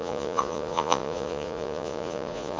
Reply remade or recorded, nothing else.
remade